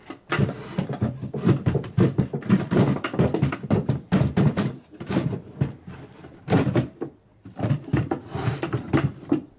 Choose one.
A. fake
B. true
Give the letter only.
A